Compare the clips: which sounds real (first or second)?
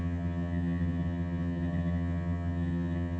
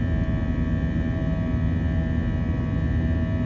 second